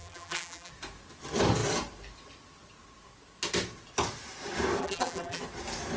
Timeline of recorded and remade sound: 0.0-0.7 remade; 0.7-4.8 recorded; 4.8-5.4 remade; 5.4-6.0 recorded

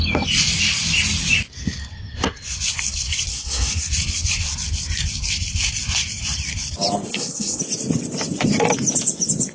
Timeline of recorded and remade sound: 0.0-3.3 recorded; 3.3-3.8 remade; 3.8-7.1 recorded; 7.1-7.6 remade; 7.6-9.5 recorded